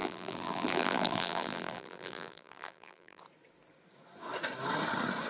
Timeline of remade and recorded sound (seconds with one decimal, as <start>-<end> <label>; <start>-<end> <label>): 0.0-3.2 remade; 3.2-5.3 recorded